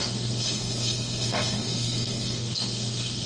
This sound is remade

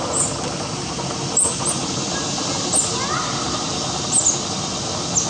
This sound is recorded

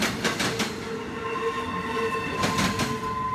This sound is recorded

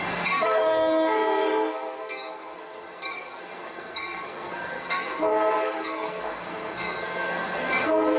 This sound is remade